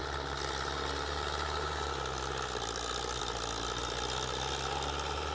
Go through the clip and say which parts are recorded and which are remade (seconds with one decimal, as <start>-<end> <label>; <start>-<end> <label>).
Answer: 0.0-5.3 recorded